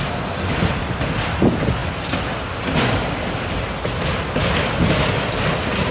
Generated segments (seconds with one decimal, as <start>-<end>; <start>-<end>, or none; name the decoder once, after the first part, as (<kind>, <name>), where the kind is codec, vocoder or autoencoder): none